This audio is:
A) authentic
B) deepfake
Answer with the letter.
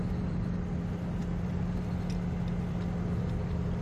A